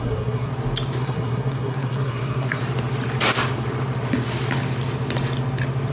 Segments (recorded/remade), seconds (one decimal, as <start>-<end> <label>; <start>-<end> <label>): 0.0-0.5 remade; 0.5-1.0 recorded; 1.0-2.6 remade; 2.6-5.9 recorded